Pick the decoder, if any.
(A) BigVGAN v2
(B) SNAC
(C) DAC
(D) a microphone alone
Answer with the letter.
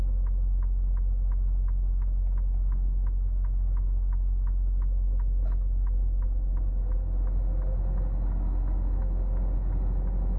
D